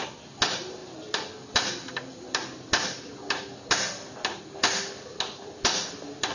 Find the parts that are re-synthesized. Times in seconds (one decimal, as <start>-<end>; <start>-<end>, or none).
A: none